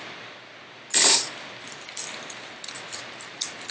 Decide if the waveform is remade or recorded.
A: recorded